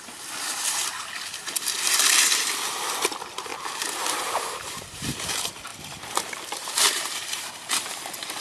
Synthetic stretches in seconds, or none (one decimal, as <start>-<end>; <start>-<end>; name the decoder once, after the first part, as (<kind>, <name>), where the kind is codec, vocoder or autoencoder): 3.5-5.1 (vocoder, BigVGAN v2); 5.7-7.5